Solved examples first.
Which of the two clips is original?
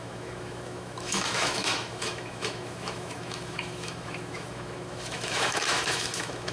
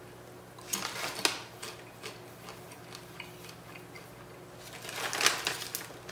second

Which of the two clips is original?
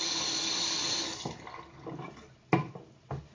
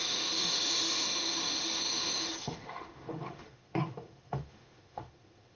first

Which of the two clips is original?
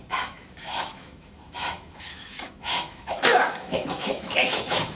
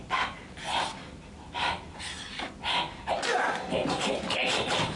second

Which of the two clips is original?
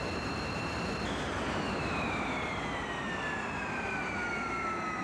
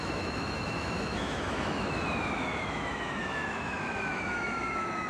first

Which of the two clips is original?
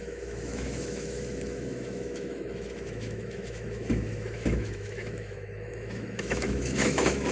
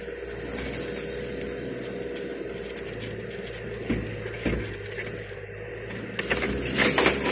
second